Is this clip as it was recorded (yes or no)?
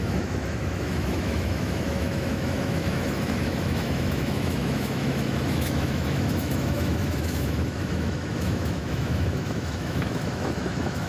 no